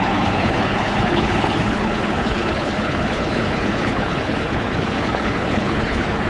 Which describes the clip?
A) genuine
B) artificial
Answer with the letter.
B